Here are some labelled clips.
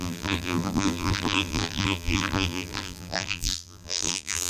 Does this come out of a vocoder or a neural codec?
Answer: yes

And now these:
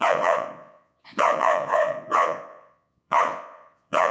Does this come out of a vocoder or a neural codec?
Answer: yes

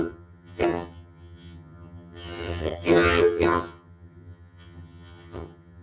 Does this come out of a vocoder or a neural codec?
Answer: yes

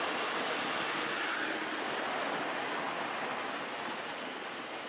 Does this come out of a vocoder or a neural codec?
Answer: no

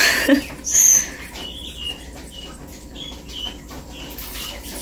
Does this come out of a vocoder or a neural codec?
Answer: no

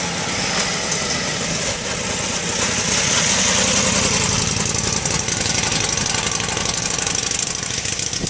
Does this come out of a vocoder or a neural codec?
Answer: no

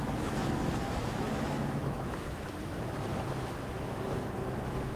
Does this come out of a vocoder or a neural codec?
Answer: yes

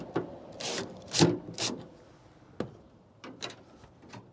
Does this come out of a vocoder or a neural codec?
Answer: no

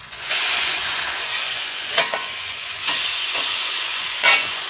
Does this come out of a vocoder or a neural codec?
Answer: yes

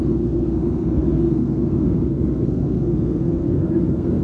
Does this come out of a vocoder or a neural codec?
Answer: yes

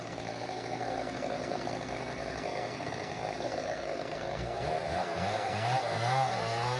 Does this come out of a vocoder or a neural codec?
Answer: yes